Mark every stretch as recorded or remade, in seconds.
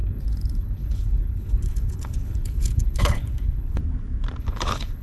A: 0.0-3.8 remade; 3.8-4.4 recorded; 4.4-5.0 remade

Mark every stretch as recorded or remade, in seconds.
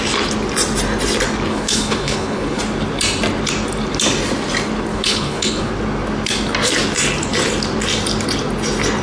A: 0.0-1.5 recorded; 1.5-2.6 remade; 2.6-4.9 recorded; 4.9-5.7 remade; 5.7-9.0 recorded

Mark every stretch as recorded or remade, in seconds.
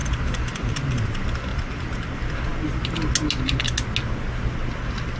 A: 0.0-1.1 remade; 1.1-1.5 recorded; 1.5-2.0 remade; 2.0-5.2 recorded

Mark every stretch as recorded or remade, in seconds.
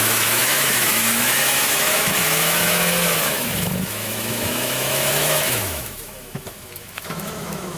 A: 0.0-7.8 remade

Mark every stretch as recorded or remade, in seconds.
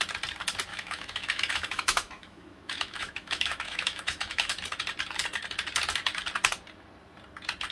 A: 0.0-0.7 recorded; 0.7-4.5 remade; 4.5-7.7 recorded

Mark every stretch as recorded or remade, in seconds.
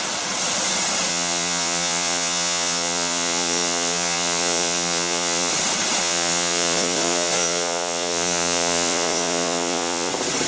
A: 0.0-1.1 recorded; 1.1-5.5 remade; 5.5-6.0 recorded; 6.0-10.1 remade; 10.1-10.5 recorded